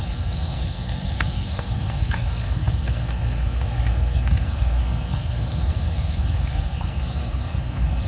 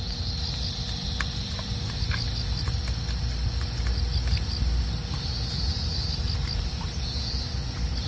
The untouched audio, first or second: second